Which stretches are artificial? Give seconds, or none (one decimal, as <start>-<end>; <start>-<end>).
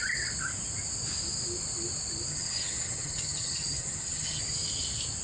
2.3-4.4